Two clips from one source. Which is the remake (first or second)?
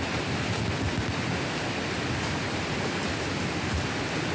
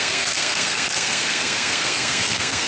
second